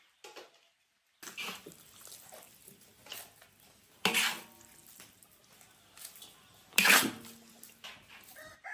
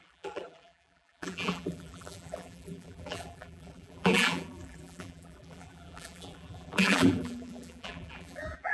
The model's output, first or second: second